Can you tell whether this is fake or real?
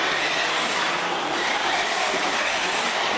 real